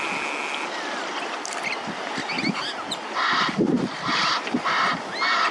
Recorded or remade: recorded